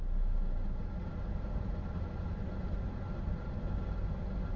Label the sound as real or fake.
real